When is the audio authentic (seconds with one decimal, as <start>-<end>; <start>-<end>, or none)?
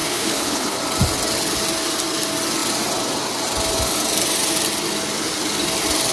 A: 0.8-6.1